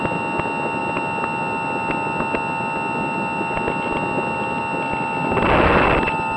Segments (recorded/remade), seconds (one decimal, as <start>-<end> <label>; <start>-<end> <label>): 0.0-6.4 recorded